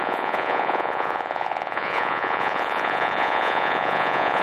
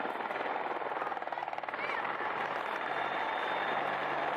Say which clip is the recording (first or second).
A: second